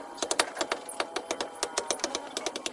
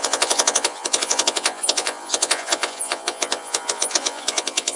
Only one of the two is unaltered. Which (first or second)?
first